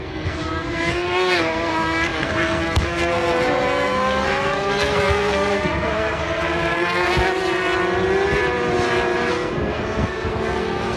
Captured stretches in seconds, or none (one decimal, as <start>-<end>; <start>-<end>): 7.4-9.3